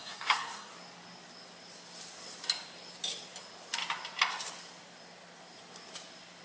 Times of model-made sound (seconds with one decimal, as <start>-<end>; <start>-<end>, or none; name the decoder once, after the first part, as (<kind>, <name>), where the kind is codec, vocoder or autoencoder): 0.0-0.7 (codec, SNAC)